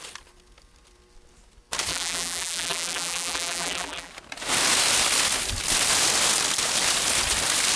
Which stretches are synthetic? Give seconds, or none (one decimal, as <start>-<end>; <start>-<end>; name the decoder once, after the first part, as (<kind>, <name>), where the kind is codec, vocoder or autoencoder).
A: 1.9-4.1 (vocoder, BigVGAN v2)